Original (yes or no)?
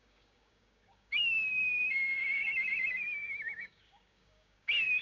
no